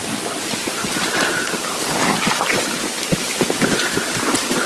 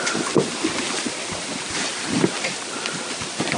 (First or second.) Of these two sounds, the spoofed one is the second